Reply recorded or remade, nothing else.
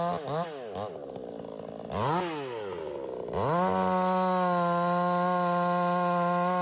recorded